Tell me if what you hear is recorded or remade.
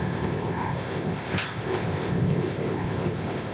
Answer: remade